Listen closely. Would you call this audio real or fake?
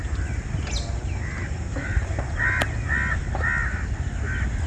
real